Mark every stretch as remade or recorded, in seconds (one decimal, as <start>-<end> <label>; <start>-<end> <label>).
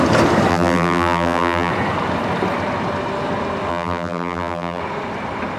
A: 0.0-0.5 recorded; 0.5-1.7 remade; 1.7-3.7 recorded; 3.7-4.8 remade; 4.8-5.6 recorded